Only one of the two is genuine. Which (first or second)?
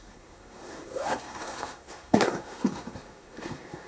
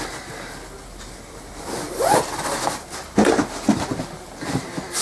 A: second